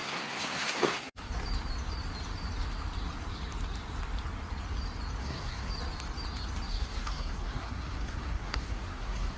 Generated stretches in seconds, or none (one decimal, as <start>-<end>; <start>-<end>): 0.0-1.3; 5.2-5.7; 6.7-9.4